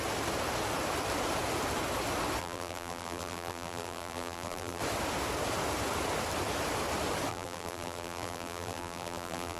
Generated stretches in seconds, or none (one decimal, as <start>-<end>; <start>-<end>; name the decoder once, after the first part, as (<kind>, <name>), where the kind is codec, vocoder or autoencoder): 2.4-4.8 (vocoder, BigVGAN v2); 7.3-9.6